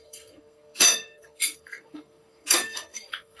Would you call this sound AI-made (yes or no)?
yes